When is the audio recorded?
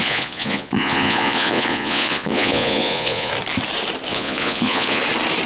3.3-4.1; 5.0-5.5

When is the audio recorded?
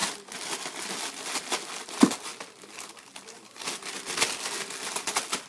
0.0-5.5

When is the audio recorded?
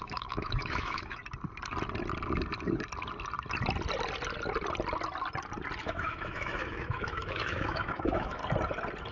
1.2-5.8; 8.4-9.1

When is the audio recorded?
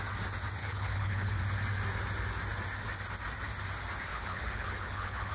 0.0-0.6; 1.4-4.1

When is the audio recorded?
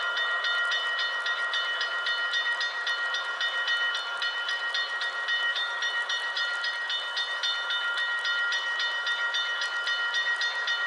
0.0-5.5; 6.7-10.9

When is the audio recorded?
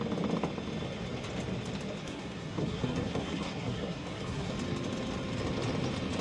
0.0-2.0; 4.5-6.2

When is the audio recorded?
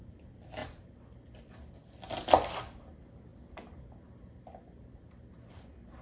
0.0-3.3; 4.1-6.0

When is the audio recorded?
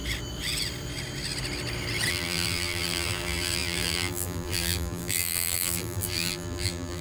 0.0-2.1